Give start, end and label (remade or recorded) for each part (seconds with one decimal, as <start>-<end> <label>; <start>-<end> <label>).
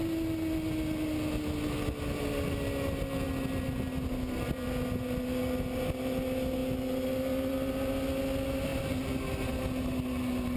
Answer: 0.0-10.6 recorded